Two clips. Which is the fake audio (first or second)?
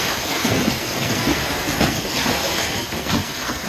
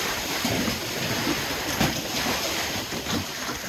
first